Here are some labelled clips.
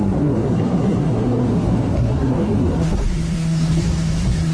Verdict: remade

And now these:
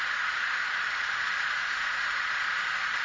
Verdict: recorded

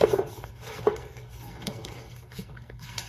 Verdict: remade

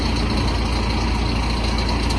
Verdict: recorded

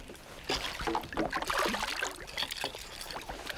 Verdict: recorded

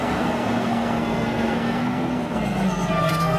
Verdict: remade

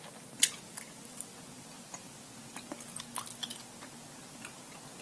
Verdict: recorded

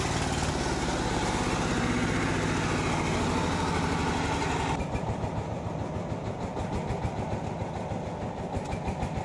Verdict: recorded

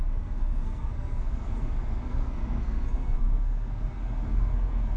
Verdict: remade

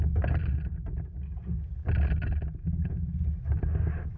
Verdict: recorded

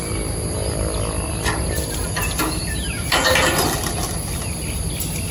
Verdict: recorded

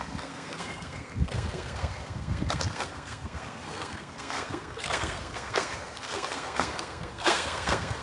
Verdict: remade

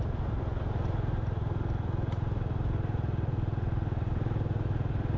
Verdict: recorded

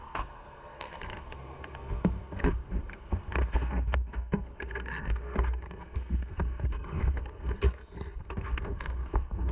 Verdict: remade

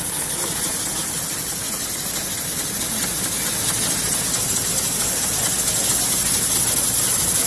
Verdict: recorded